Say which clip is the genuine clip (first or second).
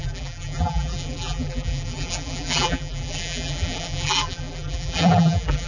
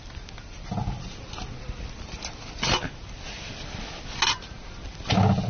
second